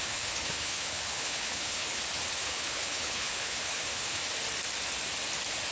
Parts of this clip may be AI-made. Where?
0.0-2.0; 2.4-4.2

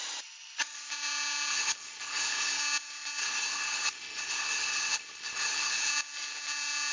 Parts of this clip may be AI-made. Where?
1.5-2.6; 3.2-5.9

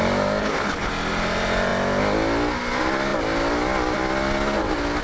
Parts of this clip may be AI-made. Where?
0.4-0.9